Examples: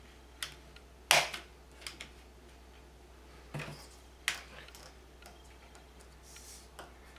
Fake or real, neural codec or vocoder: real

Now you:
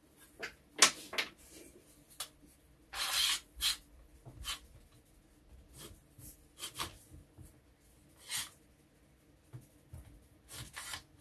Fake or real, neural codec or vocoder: real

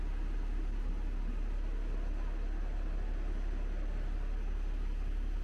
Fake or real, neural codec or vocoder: real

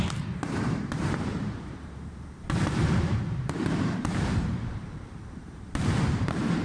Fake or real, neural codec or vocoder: fake, vocoder, BigVGAN v2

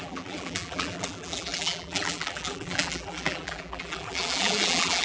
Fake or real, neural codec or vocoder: fake, vocoder, BigVGAN v2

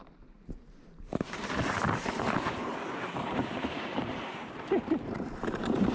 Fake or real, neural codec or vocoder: fake, vocoder, BigVGAN v2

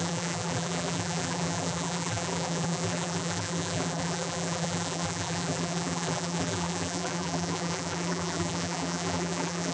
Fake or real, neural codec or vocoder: fake, vocoder, BigVGAN v2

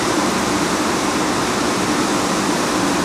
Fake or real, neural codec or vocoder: fake, vocoder, BigVGAN v2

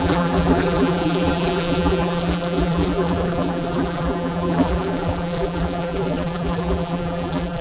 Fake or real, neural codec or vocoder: fake, vocoder, BigVGAN v2